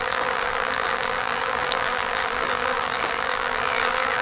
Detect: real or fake fake